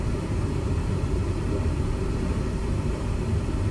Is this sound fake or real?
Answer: fake